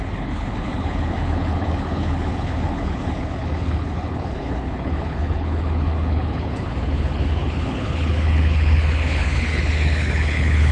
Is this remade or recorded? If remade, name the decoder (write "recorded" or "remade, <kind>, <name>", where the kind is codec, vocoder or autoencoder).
remade, codec, HILCodec